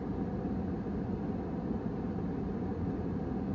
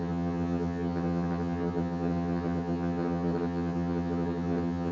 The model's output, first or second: second